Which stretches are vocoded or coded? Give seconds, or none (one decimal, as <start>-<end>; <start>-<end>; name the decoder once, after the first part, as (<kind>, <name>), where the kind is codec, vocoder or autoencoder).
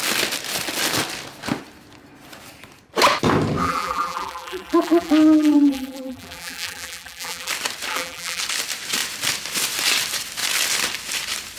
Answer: 3.6-7.5 (vocoder, BigVGAN v2); 7.9-8.4